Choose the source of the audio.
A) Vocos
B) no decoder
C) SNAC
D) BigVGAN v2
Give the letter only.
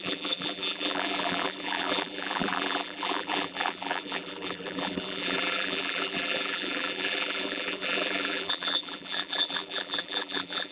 D